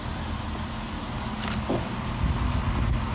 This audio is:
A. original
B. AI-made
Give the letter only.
A